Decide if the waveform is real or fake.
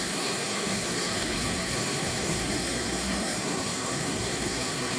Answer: fake